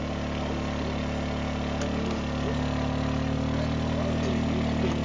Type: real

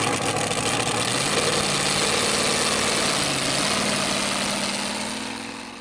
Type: real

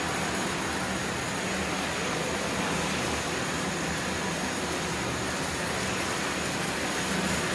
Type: real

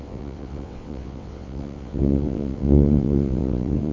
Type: fake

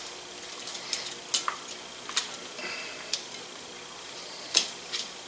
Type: real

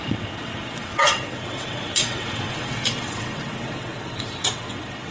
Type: fake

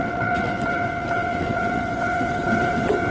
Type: fake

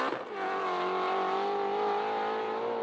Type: real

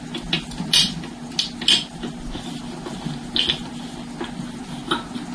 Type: real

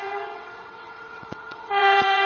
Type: fake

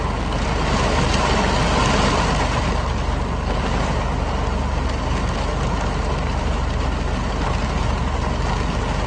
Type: real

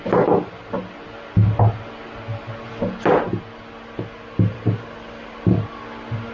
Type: real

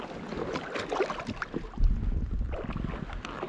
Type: real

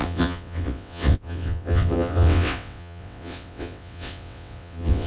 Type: fake